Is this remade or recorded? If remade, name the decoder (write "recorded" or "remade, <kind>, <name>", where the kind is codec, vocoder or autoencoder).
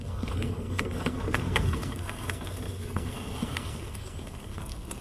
remade, codec, SNAC